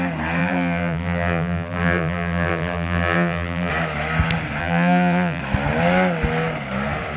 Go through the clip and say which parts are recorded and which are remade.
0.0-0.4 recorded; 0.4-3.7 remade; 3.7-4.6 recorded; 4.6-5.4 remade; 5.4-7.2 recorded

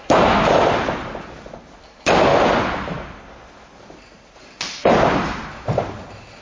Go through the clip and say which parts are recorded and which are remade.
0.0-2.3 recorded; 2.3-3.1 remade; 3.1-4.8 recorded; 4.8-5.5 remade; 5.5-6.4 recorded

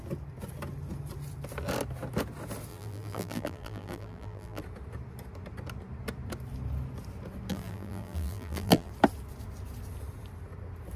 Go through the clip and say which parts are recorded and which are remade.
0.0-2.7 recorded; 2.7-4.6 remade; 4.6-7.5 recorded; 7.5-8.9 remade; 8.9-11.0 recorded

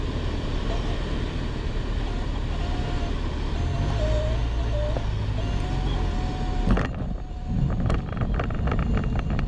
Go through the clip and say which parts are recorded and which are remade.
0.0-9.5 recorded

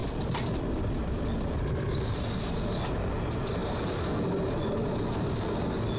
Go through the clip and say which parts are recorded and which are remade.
0.0-2.2 remade; 2.2-6.0 recorded

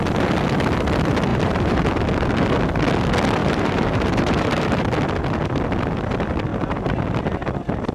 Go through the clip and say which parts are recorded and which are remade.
0.0-1.3 recorded; 1.3-1.9 remade; 1.9-3.4 recorded; 3.4-4.7 remade; 4.7-6.5 recorded; 6.5-7.0 remade; 7.0-7.9 recorded

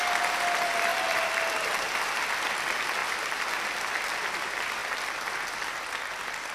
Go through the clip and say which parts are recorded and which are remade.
0.0-0.9 recorded; 0.9-2.0 remade; 2.0-3.0 recorded; 3.0-3.9 remade; 3.9-4.8 recorded; 4.8-5.3 remade; 5.3-6.5 recorded